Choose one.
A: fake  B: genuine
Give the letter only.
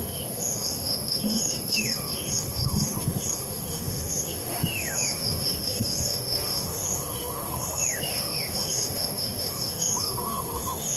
A